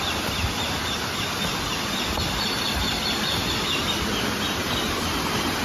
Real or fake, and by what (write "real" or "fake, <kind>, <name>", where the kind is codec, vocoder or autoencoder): real